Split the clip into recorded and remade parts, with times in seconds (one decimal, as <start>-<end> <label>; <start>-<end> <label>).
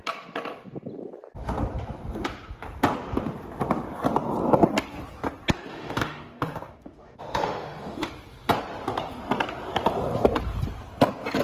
0.0-5.7 recorded; 5.7-8.1 remade; 8.1-11.4 recorded